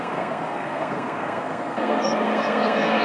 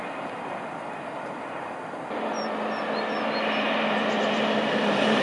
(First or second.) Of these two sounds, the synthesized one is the first